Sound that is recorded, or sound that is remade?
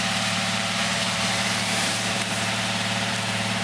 remade